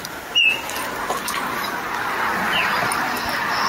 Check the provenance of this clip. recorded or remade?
recorded